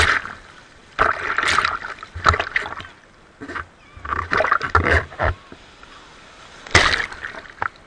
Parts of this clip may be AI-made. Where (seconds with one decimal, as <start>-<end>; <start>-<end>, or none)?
none